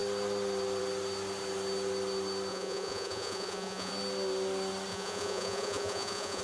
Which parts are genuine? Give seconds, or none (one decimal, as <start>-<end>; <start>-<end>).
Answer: 0.0-2.5; 3.9-4.9